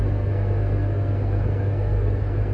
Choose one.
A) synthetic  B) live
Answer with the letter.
A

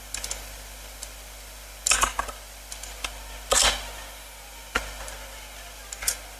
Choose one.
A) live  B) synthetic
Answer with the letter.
A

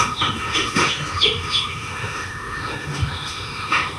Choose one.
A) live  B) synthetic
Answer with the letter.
B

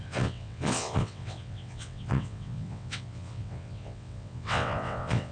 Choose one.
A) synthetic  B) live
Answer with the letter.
A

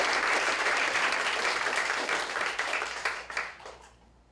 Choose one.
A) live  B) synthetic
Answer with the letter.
B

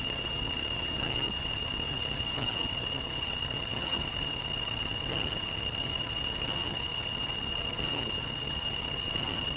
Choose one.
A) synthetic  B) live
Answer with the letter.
A